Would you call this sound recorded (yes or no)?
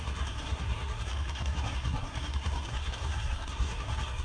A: no